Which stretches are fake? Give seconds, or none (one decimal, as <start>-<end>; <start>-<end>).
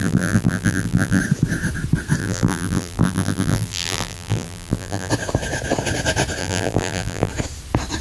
0.0-1.2; 2.2-5.1; 6.4-7.3